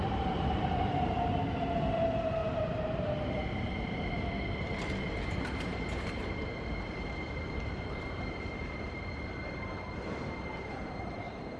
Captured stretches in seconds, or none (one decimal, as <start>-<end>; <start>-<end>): none